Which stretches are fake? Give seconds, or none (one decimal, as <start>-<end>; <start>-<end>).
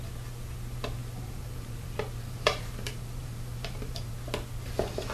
1.0-4.1